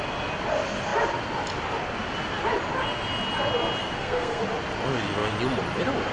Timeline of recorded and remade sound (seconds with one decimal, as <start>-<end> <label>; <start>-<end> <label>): 0.0-3.8 recorded; 3.8-4.4 remade; 4.4-6.1 recorded